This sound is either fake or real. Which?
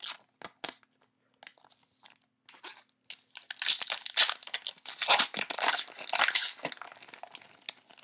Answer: real